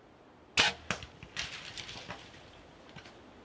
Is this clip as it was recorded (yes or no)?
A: yes